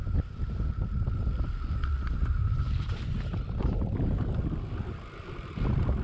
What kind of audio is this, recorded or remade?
remade